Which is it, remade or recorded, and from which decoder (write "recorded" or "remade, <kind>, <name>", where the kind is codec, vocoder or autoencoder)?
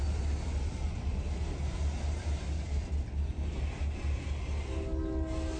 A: recorded